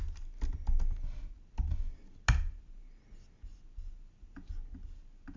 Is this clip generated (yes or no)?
no